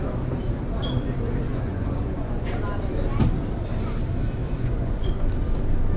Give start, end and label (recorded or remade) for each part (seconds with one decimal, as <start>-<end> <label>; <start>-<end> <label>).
0.0-1.5 recorded; 1.5-2.5 remade; 2.5-4.4 recorded; 4.4-5.1 remade; 5.1-6.0 recorded